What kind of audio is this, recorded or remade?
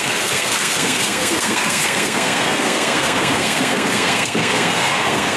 remade